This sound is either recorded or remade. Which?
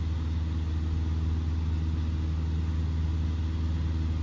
recorded